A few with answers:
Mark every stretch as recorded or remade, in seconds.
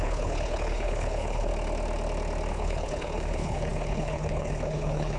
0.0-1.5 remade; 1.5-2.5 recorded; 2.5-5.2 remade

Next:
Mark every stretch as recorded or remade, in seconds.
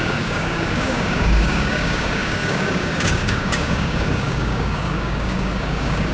0.0-6.1 remade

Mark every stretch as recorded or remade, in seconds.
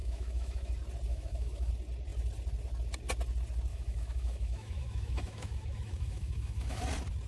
0.0-0.7 remade; 0.7-1.1 recorded; 1.1-1.7 remade; 1.7-3.7 recorded; 3.7-6.8 remade; 6.8-7.3 recorded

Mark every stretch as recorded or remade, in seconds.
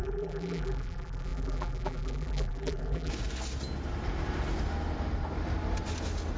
0.0-3.1 remade; 3.1-6.4 recorded